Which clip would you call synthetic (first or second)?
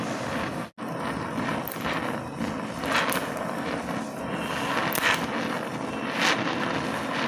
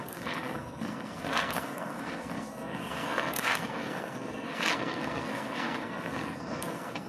second